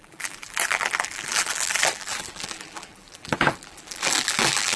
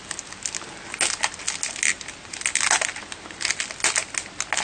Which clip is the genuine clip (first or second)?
second